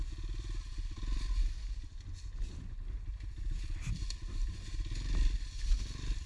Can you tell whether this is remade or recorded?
recorded